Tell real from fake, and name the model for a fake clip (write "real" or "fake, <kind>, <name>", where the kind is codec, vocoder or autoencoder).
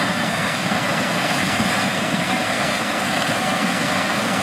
fake, codec, SNAC